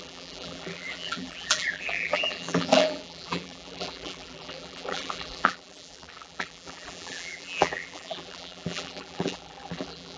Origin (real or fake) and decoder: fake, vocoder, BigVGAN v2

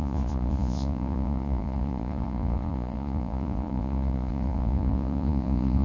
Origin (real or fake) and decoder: fake, vocoder, Vocos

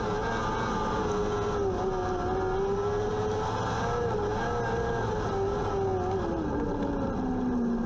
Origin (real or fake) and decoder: real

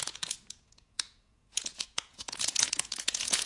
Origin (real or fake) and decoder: fake, vocoder, Vocos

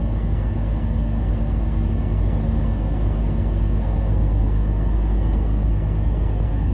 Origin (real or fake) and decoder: fake, codec, SNAC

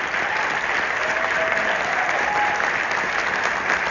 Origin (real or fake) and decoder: real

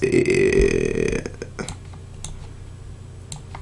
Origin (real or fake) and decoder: real